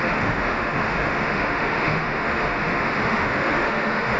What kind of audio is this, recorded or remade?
remade